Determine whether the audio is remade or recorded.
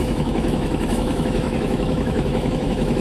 remade